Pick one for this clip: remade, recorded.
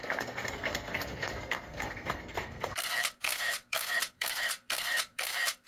remade